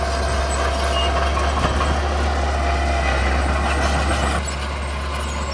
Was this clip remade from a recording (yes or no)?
no